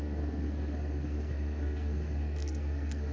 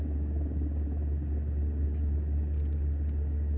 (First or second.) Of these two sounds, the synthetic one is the first